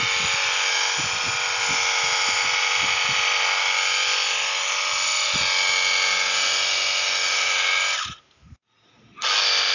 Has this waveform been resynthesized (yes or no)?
no